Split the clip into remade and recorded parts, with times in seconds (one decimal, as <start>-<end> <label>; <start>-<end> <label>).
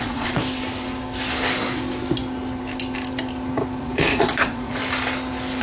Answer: 0.0-0.4 remade; 0.4-3.8 recorded; 3.8-4.8 remade; 4.8-5.6 recorded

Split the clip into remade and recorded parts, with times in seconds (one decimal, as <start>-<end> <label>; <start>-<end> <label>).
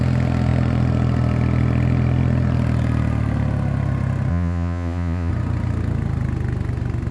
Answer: 0.0-4.3 recorded; 4.3-5.3 remade; 5.3-7.1 recorded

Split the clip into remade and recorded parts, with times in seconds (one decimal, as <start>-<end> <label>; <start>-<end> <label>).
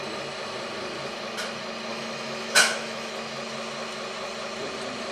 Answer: 0.0-1.9 recorded; 1.9-3.1 remade; 3.1-5.1 recorded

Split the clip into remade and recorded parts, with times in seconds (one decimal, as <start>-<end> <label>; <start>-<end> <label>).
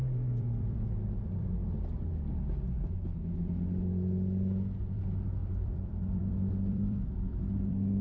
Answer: 0.0-1.6 remade; 1.6-4.8 recorded; 4.8-8.0 remade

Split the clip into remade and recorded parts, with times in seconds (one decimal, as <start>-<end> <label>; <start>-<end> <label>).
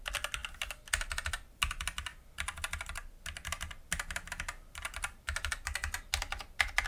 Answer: 0.0-6.9 recorded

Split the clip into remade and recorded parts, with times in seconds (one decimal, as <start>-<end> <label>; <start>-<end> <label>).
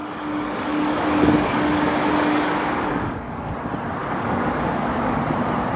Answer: 0.0-3.5 remade; 3.5-4.0 recorded; 4.0-5.2 remade; 5.2-5.8 recorded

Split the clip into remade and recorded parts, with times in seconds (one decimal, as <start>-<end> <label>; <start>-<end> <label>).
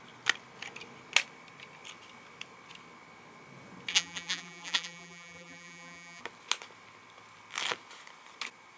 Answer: 0.0-3.9 recorded; 3.9-6.2 remade; 6.2-8.8 recorded